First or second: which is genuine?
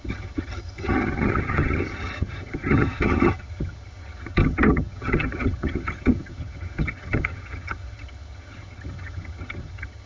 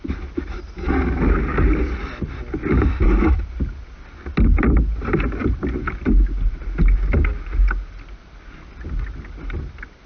second